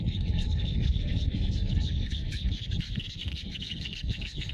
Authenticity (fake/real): fake